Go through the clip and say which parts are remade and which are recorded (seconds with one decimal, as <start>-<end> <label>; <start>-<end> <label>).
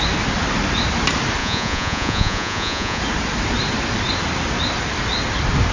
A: 0.0-1.4 recorded; 1.4-3.0 remade; 3.0-5.7 recorded